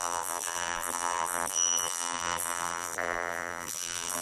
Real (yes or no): no